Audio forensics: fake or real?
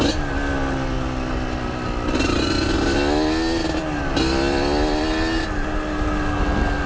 real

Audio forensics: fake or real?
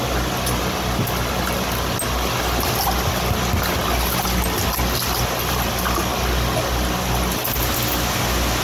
real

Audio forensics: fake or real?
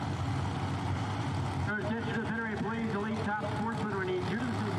real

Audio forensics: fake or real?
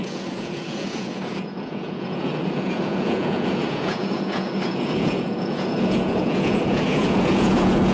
fake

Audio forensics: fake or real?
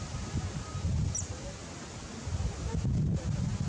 real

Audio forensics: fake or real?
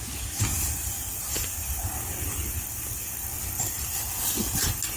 real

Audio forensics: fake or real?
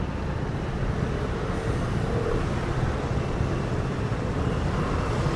real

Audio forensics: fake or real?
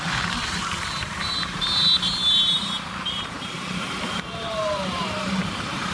fake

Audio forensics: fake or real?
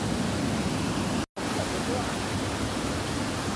real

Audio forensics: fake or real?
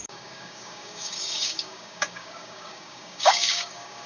fake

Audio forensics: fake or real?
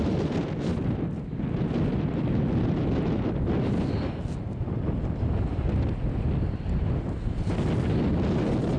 real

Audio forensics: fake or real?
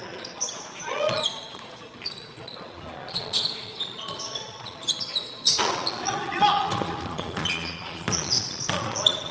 fake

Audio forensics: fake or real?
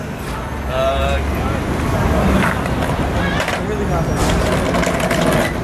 real